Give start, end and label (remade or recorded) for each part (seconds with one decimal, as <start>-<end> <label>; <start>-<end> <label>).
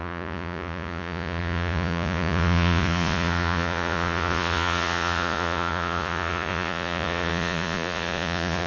0.0-8.7 remade